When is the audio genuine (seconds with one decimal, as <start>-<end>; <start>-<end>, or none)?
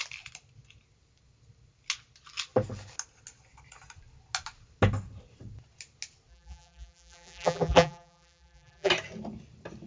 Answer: 0.0-6.3; 8.9-9.9